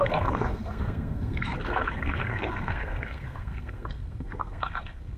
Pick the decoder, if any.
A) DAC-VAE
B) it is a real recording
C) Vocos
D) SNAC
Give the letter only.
D